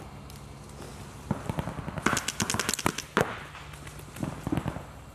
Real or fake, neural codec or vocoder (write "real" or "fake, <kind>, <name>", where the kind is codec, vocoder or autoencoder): real